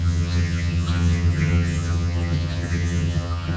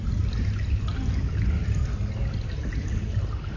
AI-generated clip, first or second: first